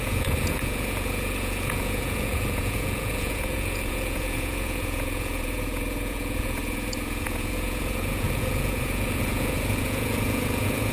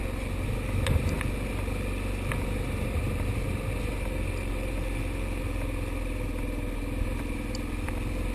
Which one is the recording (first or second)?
second